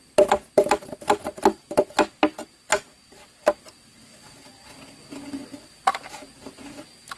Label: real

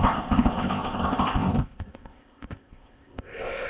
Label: fake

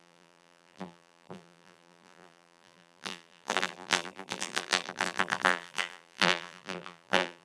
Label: fake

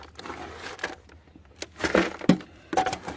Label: real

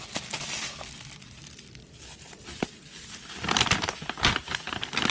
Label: real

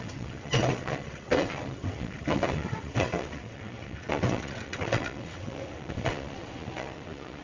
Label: fake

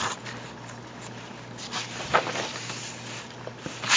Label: fake